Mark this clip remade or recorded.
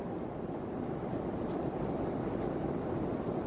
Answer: recorded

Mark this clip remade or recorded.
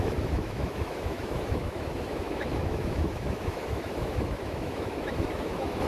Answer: remade